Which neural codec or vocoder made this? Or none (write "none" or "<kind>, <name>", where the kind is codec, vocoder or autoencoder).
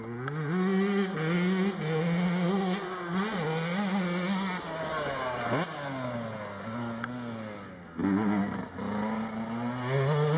none